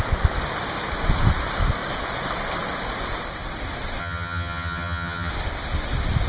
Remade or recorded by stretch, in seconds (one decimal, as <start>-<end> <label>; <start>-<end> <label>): 0.0-4.0 recorded; 4.0-5.3 remade; 5.3-6.3 recorded